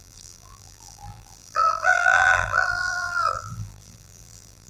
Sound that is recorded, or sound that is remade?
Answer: remade